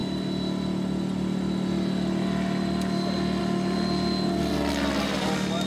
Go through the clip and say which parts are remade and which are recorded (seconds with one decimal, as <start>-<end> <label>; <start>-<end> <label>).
0.0-5.7 recorded